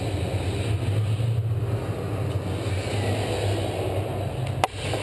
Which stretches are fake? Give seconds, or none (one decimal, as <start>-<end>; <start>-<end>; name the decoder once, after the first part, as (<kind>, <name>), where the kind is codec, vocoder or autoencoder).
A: none